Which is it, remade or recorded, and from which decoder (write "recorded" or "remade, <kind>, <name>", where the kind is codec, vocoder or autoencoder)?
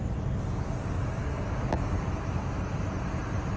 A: recorded